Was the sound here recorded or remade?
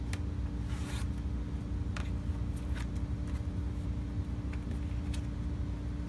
recorded